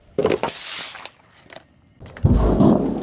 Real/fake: real